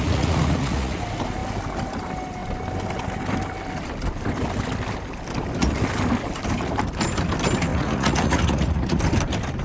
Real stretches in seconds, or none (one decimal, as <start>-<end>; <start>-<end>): 1.0-7.7; 9.0-9.6